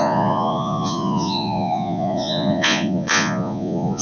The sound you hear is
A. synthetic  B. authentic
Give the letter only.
A